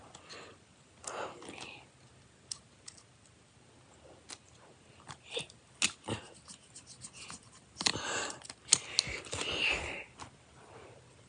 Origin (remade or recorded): recorded